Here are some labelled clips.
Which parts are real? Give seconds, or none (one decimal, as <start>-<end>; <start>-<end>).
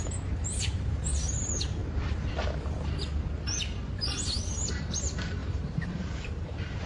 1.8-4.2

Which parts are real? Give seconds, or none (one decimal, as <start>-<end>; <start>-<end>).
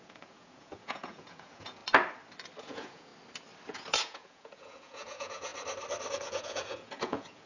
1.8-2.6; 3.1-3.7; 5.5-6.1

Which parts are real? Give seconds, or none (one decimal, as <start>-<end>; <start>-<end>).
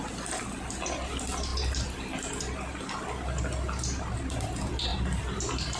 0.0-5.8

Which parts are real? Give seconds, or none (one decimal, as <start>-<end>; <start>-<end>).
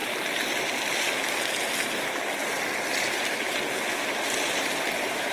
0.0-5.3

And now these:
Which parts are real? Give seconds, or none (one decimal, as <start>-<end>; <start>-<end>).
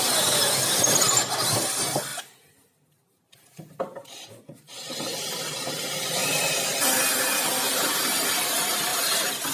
0.0-6.2; 6.8-8.9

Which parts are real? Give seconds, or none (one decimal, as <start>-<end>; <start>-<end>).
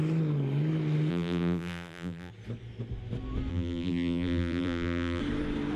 0.0-1.1; 2.3-3.5; 5.2-5.8